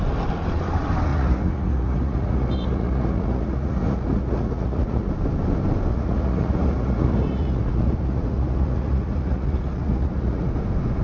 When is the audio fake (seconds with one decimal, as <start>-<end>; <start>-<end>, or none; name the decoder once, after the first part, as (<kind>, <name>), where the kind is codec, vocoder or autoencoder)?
1.1-5.1 (vocoder, Vocos); 5.9-10.5